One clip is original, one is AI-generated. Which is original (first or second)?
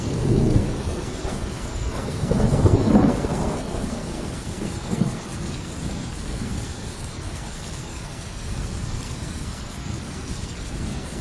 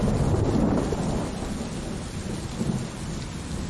second